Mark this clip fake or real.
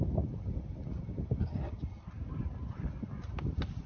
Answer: real